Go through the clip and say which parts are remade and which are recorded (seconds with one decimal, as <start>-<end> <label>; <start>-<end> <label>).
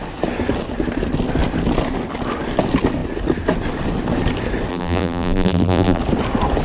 0.0-4.7 recorded; 4.7-6.0 remade; 6.0-6.6 recorded